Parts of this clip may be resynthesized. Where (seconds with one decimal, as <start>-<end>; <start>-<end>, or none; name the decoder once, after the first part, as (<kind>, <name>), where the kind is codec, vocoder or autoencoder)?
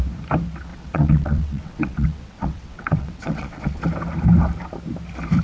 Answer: 0.7-3.8 (vocoder, WaveNeXt)